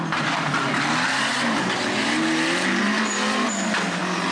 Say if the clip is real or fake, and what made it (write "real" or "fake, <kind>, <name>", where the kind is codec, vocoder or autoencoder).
real